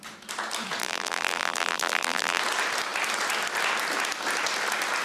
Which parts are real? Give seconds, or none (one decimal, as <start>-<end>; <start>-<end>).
0.0-0.8; 2.4-5.0